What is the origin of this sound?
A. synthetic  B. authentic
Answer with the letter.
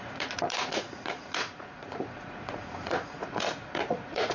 A